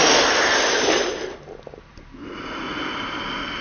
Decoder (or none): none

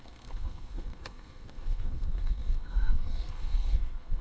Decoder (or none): codec, SNAC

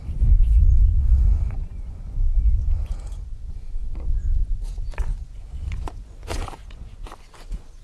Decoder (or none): vocoder, Vocos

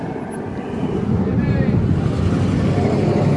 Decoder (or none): none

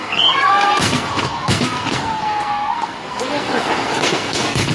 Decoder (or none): codec, SNAC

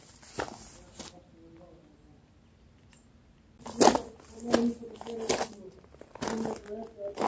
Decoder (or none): none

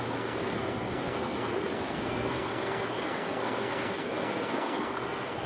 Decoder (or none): codec, SNAC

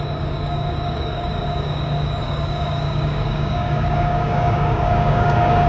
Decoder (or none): codec, DAC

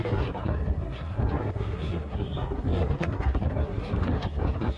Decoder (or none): codec, SNAC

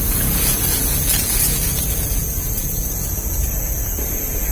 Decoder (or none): vocoder, Vocos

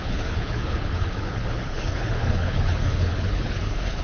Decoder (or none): codec, HILCodec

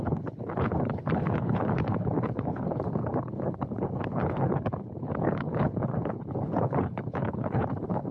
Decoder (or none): codec, HILCodec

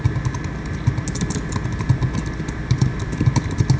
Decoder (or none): none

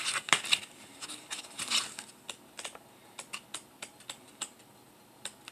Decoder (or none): none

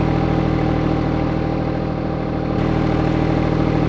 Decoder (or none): none